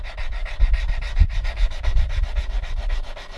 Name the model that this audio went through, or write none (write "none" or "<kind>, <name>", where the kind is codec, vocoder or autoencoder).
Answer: vocoder, BigVGAN v2